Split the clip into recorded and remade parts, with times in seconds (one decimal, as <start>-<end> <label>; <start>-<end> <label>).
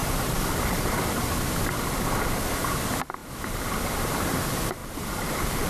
0.0-1.3 remade; 1.3-4.8 recorded; 4.8-5.7 remade